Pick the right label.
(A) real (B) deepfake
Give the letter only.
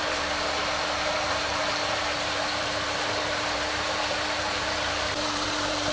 B